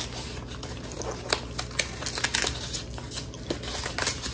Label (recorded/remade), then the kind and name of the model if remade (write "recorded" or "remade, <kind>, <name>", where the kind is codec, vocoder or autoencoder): recorded